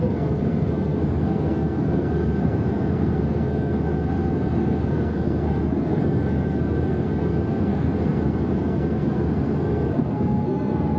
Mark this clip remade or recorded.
remade